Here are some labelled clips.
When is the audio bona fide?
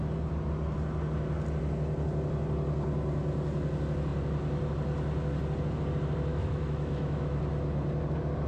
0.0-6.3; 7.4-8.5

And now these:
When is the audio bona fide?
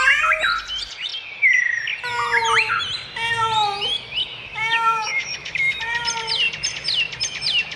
0.0-4.2; 5.8-7.8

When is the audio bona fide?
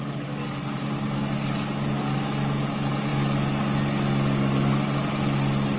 0.0-5.8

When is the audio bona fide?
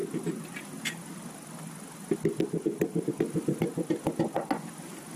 0.0-5.2